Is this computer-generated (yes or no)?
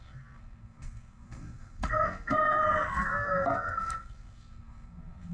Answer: yes